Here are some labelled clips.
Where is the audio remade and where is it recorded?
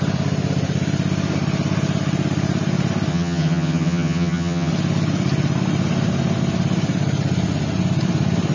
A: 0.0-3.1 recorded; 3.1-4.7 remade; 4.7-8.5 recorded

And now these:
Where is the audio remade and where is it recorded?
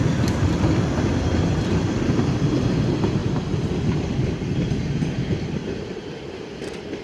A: 0.0-7.0 recorded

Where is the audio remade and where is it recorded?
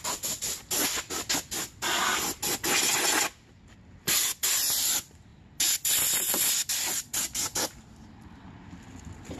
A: 0.0-9.4 recorded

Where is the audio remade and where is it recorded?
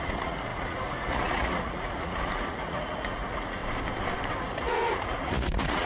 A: 0.0-3.6 remade; 3.6-4.3 recorded; 4.3-5.9 remade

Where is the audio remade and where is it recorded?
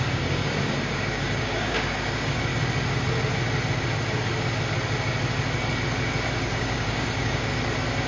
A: 0.0-2.5 remade; 2.5-6.4 recorded; 6.4-7.5 remade; 7.5-8.1 recorded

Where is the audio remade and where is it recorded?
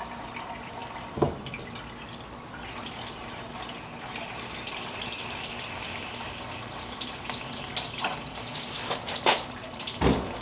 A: 0.0-10.4 recorded